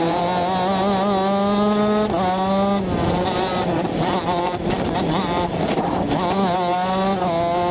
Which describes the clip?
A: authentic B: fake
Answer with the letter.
A